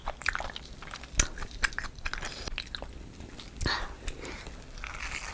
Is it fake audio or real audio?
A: real